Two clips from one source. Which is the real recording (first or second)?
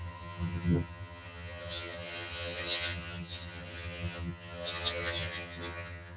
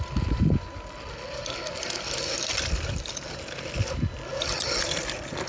second